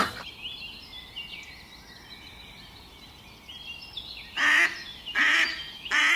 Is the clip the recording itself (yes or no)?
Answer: yes